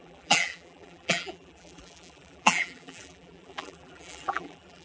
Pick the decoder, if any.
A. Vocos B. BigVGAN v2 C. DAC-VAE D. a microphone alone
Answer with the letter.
B